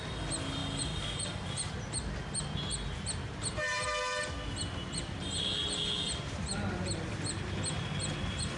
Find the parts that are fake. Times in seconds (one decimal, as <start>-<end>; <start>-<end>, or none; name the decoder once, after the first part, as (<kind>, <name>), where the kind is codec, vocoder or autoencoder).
0.6-1.7 (vocoder, BigVGAN v2)

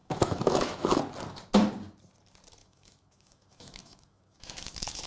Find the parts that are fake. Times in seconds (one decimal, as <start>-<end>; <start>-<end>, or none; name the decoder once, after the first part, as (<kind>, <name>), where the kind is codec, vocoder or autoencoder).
0.0-1.0 (autoencoder, DAC-VAE); 2.6-5.1

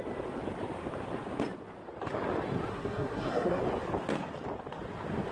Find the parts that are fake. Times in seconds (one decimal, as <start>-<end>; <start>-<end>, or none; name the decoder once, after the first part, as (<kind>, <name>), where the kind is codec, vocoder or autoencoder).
2.7-3.6 (codec, SNAC)

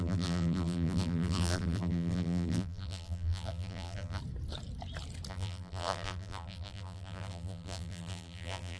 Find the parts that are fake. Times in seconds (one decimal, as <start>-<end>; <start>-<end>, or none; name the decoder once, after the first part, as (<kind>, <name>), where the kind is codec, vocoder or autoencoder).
0.0-4.2 (vocoder, BigVGAN v2); 5.3-8.8

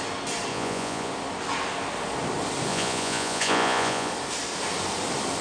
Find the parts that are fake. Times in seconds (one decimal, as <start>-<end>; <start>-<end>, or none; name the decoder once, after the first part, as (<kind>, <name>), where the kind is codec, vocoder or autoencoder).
0.5-1.1 (vocoder, Vocos); 2.7-4.1

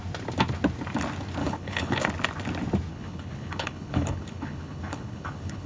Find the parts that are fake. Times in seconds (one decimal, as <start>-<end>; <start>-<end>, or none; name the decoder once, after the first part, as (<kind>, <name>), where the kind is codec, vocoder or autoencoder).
1.4-2.0 (codec, HILCodec); 2.9-5.7

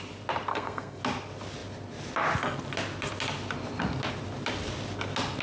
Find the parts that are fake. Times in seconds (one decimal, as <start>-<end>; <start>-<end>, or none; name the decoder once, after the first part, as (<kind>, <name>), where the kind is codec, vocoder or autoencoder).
0.5-1.0 (codec, SNAC)

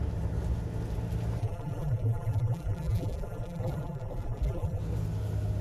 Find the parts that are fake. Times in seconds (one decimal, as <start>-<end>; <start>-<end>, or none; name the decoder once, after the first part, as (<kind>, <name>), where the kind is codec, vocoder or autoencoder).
1.4-4.8 (vocoder, BigVGAN v2)